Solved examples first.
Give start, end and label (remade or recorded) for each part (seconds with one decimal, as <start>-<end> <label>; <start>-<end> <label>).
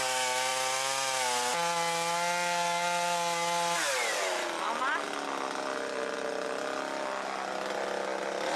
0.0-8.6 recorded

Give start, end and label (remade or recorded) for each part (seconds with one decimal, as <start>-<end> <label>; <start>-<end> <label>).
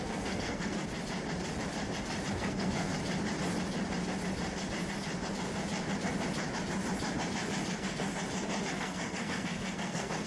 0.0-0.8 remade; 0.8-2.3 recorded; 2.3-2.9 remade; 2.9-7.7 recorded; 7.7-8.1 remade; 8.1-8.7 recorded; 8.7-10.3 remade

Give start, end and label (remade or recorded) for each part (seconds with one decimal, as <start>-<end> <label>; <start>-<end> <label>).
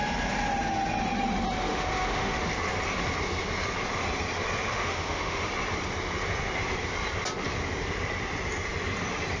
0.0-1.7 recorded; 1.7-2.4 remade; 2.4-4.7 recorded; 4.7-5.5 remade; 5.5-9.4 recorded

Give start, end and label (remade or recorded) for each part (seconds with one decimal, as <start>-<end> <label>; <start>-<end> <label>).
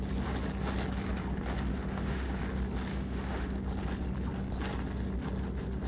0.0-1.7 recorded; 1.7-2.4 remade; 2.4-2.9 recorded; 2.9-3.6 remade; 3.6-5.9 recorded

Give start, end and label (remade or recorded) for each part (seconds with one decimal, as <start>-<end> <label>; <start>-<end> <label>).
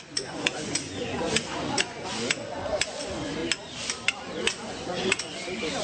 0.0-3.4 remade; 3.4-4.2 recorded; 4.2-5.8 remade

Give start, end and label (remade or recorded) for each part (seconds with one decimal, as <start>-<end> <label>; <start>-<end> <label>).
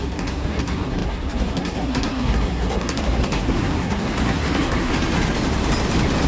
0.0-4.9 remade; 4.9-6.3 recorded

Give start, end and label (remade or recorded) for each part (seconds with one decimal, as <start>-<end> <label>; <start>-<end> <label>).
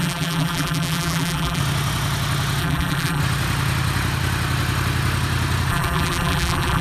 0.0-1.6 remade; 1.6-2.6 recorded; 2.6-3.2 remade; 3.2-5.7 recorded; 5.7-6.8 remade